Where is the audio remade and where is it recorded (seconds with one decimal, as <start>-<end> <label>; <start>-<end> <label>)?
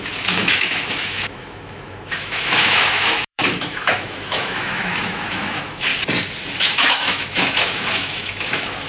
0.0-5.9 remade; 5.9-6.6 recorded; 6.6-8.9 remade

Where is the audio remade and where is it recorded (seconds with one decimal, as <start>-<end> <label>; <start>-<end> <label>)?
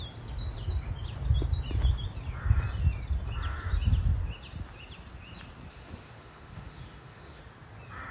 0.0-5.7 recorded; 5.7-7.4 remade; 7.4-8.1 recorded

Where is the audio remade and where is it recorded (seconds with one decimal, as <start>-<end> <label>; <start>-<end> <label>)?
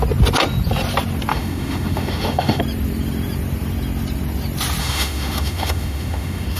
0.0-1.3 recorded; 1.3-2.6 remade; 2.6-4.8 recorded; 4.8-6.6 remade